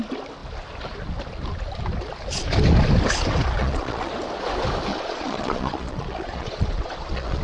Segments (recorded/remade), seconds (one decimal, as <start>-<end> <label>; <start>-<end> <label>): 0.0-3.6 recorded; 3.6-4.1 remade; 4.1-4.9 recorded; 4.9-7.4 remade